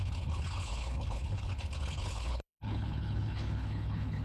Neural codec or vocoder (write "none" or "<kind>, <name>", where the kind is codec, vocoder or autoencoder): codec, HILCodec